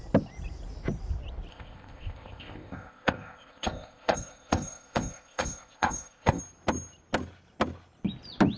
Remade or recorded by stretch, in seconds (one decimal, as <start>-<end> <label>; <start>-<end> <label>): 0.0-1.5 recorded; 1.5-6.4 remade; 6.4-8.6 recorded